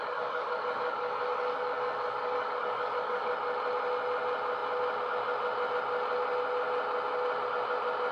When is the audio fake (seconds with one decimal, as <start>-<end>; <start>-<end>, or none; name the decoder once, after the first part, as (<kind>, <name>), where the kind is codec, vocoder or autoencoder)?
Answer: 0.0-3.3 (codec, DAC)